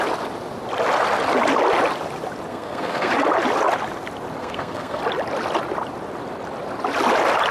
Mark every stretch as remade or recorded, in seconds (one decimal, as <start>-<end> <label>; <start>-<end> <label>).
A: 0.0-2.5 recorded; 2.5-3.1 remade; 3.1-4.4 recorded; 4.4-5.0 remade; 5.0-7.5 recorded

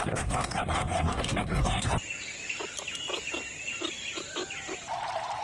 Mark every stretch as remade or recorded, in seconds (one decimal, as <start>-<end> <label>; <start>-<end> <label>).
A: 0.0-1.9 remade; 1.9-5.4 recorded

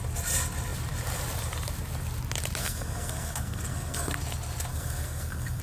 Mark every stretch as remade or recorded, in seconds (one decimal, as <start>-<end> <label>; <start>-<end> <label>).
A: 0.0-2.6 recorded; 2.6-4.1 remade; 4.1-4.7 recorded; 4.7-5.6 remade

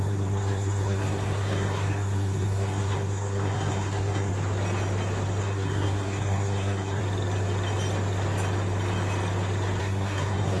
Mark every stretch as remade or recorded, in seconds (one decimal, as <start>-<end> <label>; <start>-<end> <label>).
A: 0.0-4.3 remade; 4.3-5.4 recorded; 5.4-7.0 remade; 7.0-9.8 recorded; 9.8-10.6 remade